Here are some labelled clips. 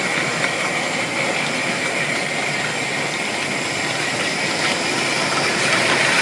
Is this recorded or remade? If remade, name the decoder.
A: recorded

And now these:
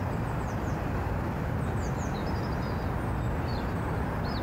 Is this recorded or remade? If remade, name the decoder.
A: recorded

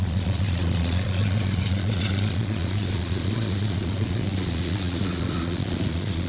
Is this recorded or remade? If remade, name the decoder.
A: remade, vocoder, Vocos